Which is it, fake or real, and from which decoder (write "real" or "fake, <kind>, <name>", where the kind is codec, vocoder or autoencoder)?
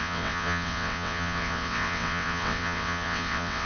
fake, vocoder, WaveNeXt